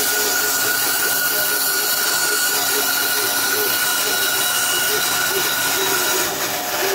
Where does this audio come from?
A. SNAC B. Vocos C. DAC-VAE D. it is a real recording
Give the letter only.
D